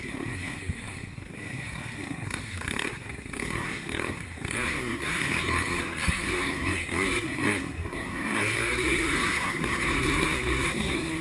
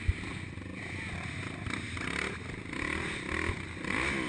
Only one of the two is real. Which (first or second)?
second